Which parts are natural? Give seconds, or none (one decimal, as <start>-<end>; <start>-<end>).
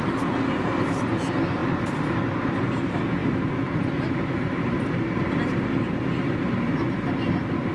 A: 0.0-7.7